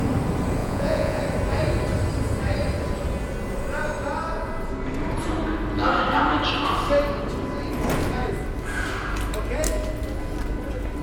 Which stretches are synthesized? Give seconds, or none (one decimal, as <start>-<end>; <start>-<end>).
0.6-1.2